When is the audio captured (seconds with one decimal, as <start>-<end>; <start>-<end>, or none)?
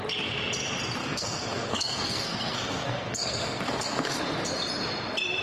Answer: 0.0-1.0; 4.2-5.4